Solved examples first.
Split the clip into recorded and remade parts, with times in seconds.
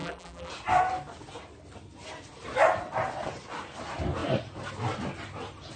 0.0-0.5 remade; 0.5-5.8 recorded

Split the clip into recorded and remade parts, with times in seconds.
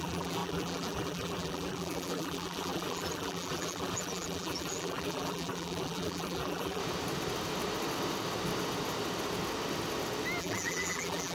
0.0-6.8 remade; 6.8-10.4 recorded; 10.4-11.3 remade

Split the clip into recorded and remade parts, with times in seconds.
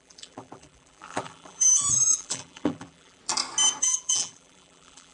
0.0-3.2 remade; 3.2-3.8 recorded; 3.8-5.1 remade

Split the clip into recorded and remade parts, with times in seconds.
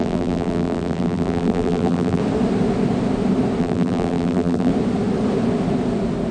0.0-2.2 remade; 2.2-3.6 recorded; 3.6-4.7 remade; 4.7-6.3 recorded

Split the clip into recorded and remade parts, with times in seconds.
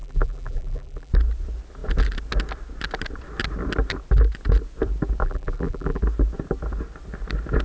0.0-1.1 remade; 1.1-5.2 recorded; 5.2-6.0 remade; 6.0-7.6 recorded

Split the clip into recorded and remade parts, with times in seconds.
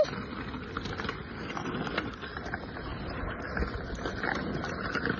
0.0-2.9 recorded; 2.9-3.6 remade; 3.6-5.2 recorded